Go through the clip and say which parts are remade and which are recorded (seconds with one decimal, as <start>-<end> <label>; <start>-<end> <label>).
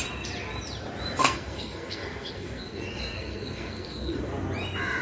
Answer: 0.0-1.2 recorded; 1.2-4.2 remade; 4.2-5.0 recorded